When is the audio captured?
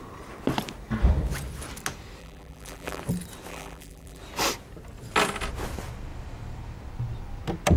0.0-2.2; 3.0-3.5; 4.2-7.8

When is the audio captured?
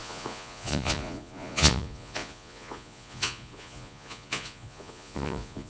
none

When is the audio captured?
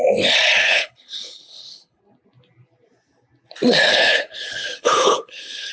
0.0-0.6; 2.0-3.9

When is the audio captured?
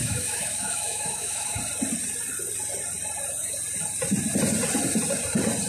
1.6-5.7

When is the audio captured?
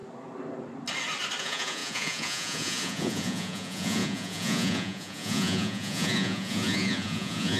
0.0-1.4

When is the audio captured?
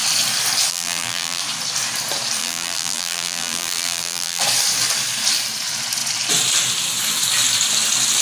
0.0-0.7; 1.4-2.4; 4.4-8.2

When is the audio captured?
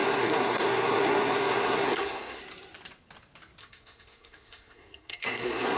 2.4-3.6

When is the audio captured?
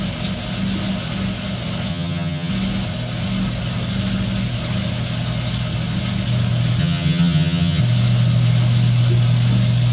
0.0-1.9; 2.5-6.8; 7.8-9.9